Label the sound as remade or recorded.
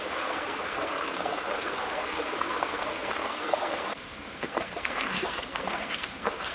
remade